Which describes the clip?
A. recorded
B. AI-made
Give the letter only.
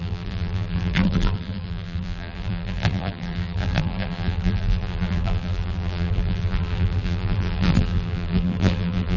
B